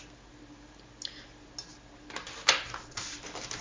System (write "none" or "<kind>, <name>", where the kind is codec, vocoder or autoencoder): none